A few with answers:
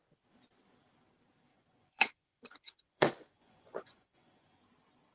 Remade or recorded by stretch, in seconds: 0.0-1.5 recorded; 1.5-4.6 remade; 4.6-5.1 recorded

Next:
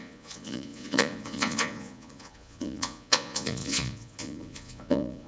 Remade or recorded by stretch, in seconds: 0.0-5.3 remade

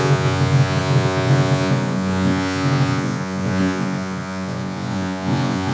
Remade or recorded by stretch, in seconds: 0.0-5.7 remade